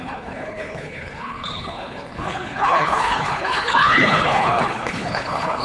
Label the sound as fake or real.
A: fake